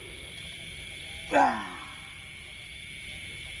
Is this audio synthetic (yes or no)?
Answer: no